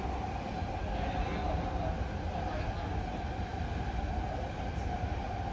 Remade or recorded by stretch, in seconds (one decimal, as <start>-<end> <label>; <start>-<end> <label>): 0.0-3.5 recorded; 3.5-4.0 remade; 4.0-5.5 recorded